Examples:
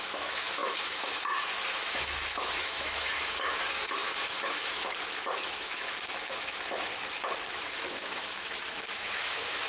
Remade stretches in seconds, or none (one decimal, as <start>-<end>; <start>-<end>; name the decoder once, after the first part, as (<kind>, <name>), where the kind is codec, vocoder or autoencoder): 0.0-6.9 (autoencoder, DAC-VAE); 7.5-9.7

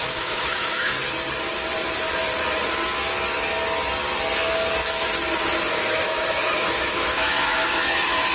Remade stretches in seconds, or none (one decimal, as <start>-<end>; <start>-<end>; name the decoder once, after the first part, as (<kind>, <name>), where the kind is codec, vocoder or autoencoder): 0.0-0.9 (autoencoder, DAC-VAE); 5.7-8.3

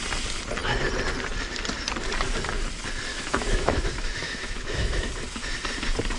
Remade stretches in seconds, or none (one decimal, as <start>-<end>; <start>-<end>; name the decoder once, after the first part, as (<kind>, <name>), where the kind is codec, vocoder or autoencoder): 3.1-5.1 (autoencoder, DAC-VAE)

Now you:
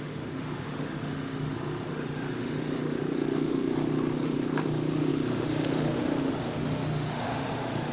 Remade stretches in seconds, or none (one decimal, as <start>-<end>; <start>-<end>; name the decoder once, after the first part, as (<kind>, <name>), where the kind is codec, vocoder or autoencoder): 0.0-7.9 (autoencoder, DAC-VAE)

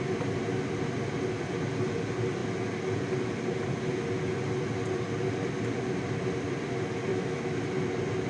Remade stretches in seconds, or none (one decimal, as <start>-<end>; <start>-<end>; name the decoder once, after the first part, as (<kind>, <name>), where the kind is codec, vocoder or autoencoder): 7.1-7.6 (autoencoder, DAC-VAE)